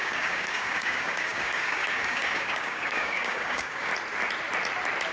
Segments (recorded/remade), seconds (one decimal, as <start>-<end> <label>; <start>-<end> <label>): 0.0-3.9 remade; 3.9-5.1 recorded